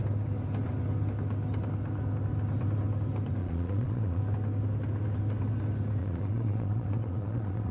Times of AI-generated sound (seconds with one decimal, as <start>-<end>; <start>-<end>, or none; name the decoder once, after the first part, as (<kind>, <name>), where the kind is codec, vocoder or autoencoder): 3.4-4.2 (vocoder, Vocos); 6.0-7.7